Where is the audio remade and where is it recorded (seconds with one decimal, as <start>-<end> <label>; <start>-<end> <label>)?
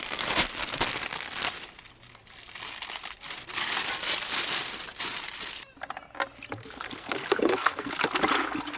0.0-6.6 recorded; 6.6-7.9 remade; 7.9-8.8 recorded